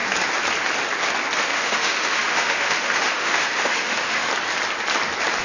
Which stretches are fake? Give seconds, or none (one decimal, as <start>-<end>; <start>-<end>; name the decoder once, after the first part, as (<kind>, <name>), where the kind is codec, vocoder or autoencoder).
1.4-4.3 (autoencoder, DAC-VAE)